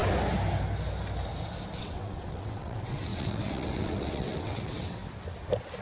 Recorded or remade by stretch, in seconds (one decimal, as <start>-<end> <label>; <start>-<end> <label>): 0.0-1.8 recorded; 1.8-5.0 remade; 5.0-5.8 recorded